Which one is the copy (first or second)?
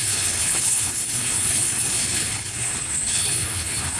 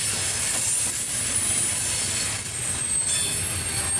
first